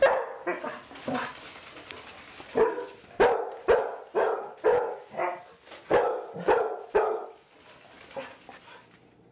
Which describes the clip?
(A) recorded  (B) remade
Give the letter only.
A